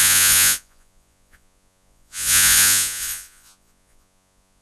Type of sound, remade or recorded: remade